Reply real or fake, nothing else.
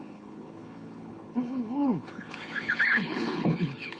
fake